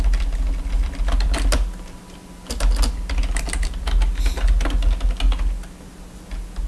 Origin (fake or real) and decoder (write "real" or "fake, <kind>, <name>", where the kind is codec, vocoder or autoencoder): real